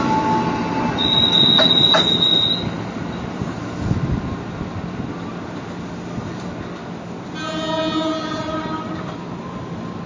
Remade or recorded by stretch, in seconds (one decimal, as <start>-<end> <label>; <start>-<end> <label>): 0.0-10.1 recorded